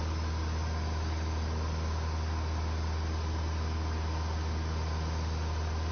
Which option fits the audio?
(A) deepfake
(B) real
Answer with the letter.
B